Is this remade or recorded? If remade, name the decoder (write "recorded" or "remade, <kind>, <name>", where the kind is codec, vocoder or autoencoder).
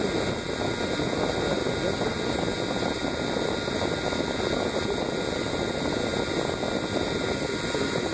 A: recorded